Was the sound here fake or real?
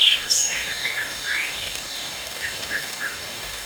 fake